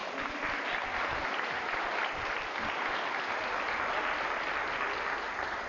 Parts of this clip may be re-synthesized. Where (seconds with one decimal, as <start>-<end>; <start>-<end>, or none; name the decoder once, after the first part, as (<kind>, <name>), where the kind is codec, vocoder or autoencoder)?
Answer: 0.0-3.4 (vocoder, BigVGAN v2)